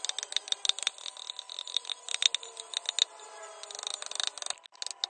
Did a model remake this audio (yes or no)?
no